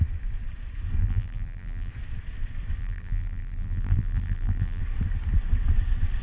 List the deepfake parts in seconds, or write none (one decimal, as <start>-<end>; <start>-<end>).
1.0-1.9; 2.8-4.8